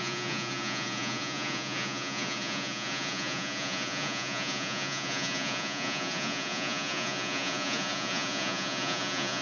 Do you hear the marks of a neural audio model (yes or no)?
yes